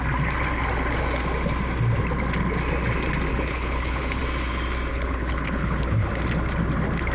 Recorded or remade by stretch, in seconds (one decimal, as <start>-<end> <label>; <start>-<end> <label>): 0.0-3.3 recorded; 3.3-4.2 remade; 4.2-4.9 recorded; 4.9-6.1 remade; 6.1-7.1 recorded